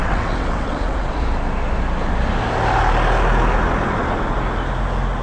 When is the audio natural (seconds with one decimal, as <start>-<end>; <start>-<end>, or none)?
1.2-5.2